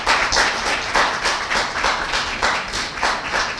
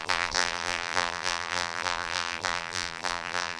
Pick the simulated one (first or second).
second